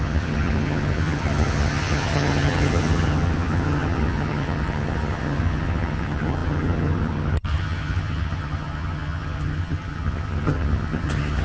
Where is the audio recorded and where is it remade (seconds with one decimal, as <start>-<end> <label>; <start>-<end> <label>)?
0.0-11.4 remade